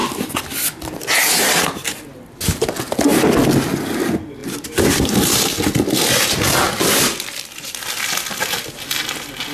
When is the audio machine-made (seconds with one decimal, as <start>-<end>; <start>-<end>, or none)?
4.4-8.0